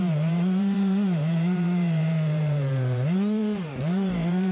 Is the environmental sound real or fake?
fake